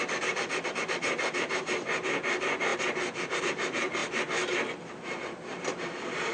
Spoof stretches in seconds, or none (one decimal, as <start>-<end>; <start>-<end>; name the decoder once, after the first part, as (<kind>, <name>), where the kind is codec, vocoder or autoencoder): 0.0-4.0 (vocoder, BigVGAN v2); 4.8-6.3